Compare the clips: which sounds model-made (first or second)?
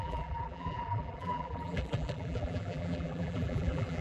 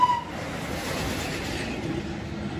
first